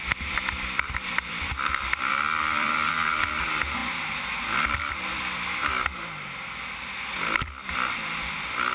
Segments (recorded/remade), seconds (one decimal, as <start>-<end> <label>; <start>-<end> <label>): 0.0-1.7 remade; 1.7-2.1 recorded; 2.1-2.9 remade; 2.9-8.7 recorded